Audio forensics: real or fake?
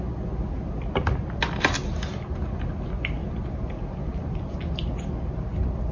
real